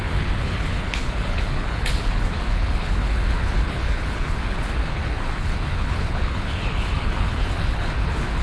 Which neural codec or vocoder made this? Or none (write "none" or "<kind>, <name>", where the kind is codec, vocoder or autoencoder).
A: codec, HILCodec